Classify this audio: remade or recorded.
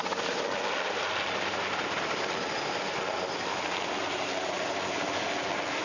recorded